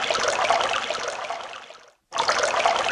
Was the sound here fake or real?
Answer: real